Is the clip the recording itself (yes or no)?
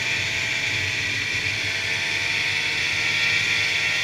yes